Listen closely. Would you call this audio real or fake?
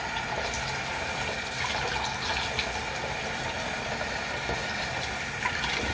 real